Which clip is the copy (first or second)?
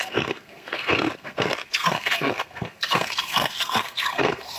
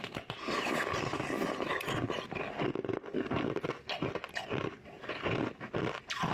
first